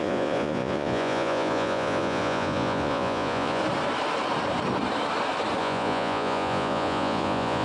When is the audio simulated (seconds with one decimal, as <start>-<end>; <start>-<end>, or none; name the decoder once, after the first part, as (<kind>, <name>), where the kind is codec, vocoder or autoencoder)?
0.0-3.6 (vocoder, Vocos); 5.6-7.6